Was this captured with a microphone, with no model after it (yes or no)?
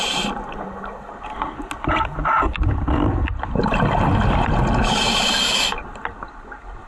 yes